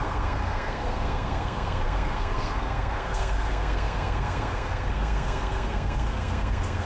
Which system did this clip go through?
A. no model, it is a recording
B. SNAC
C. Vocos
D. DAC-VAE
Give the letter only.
B